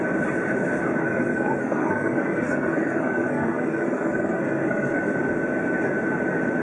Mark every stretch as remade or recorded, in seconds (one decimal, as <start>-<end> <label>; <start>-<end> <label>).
0.0-1.0 recorded; 1.0-5.0 remade; 5.0-6.6 recorded